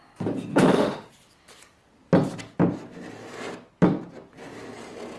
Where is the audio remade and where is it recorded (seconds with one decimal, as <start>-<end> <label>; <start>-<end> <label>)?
0.0-0.5 recorded; 0.5-1.1 remade; 1.1-5.2 recorded